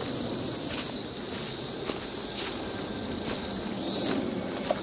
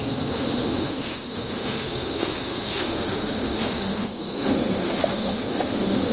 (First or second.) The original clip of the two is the first